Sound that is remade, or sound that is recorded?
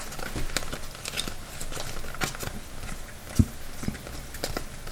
recorded